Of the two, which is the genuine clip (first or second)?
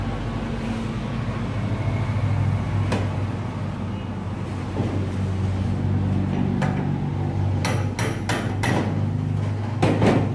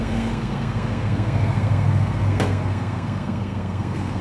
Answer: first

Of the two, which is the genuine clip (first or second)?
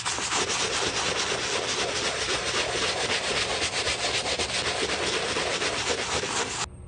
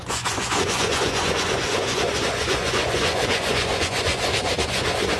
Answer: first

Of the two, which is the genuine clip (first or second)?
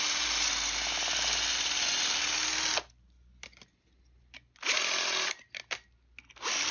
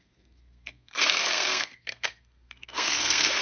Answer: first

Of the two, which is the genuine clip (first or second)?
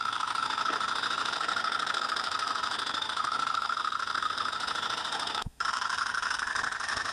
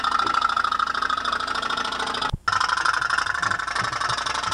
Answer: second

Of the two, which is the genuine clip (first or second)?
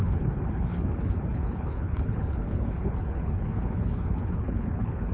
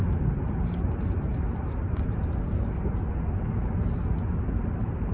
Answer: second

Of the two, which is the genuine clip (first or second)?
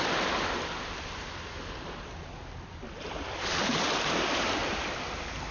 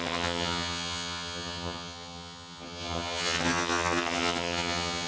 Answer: first